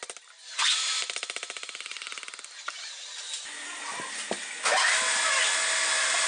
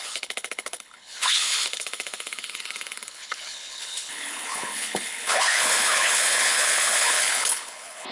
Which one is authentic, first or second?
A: first